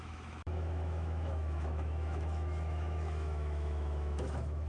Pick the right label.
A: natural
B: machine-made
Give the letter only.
B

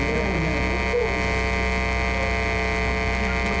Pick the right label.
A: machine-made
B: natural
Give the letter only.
B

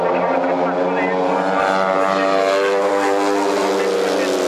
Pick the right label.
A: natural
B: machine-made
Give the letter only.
A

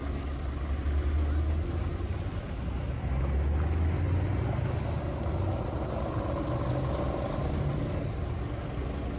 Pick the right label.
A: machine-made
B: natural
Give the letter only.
B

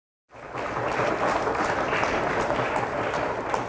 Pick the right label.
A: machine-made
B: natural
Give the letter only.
B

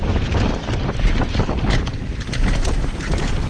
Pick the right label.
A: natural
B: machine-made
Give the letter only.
A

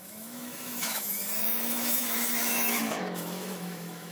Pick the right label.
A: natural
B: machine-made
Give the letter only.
B